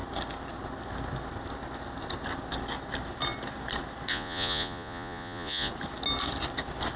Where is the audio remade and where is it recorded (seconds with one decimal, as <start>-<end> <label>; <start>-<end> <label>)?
0.0-4.1 recorded; 4.1-5.7 remade; 5.7-7.0 recorded